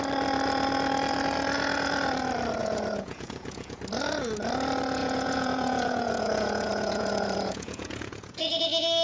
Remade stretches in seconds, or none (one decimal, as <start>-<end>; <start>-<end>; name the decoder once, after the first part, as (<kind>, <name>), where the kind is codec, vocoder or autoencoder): 2.6-3.8 (vocoder, Vocos); 5.0-8.6